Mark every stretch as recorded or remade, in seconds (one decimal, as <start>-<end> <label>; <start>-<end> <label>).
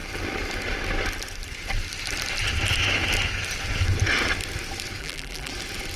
0.0-5.0 recorded; 5.0-5.5 remade; 5.5-6.0 recorded